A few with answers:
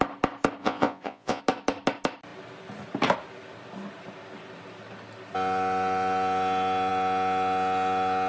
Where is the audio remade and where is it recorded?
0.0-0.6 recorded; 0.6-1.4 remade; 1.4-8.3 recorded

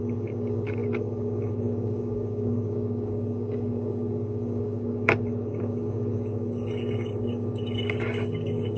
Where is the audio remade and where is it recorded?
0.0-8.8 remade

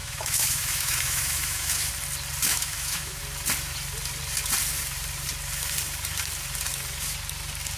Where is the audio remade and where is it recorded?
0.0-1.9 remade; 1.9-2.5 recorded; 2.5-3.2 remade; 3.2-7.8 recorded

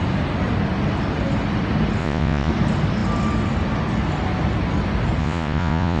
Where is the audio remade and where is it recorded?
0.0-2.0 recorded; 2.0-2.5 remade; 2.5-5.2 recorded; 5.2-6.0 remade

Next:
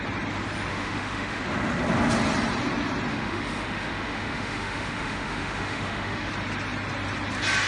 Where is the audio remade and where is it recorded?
0.0-0.7 recorded; 0.7-1.4 remade; 1.4-3.1 recorded; 3.1-6.3 remade; 6.3-7.7 recorded

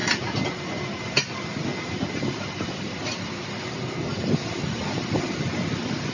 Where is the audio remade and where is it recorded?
0.0-6.1 recorded

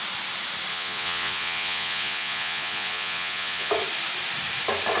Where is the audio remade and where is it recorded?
0.0-0.7 recorded; 0.7-3.7 remade; 3.7-5.0 recorded

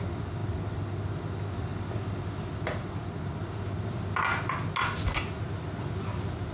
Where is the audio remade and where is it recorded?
0.0-6.5 recorded